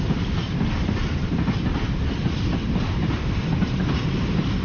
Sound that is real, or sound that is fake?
fake